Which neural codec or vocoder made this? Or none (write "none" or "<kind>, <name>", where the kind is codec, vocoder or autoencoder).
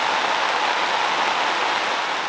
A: none